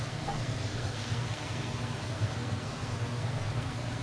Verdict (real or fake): fake